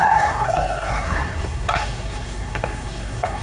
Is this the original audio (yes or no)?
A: no